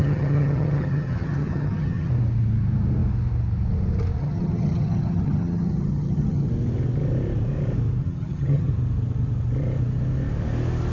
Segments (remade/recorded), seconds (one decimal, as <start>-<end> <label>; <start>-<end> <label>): 0.0-2.1 remade; 2.1-4.2 recorded; 4.2-6.5 remade; 6.5-8.0 recorded; 8.0-8.7 remade; 8.7-10.9 recorded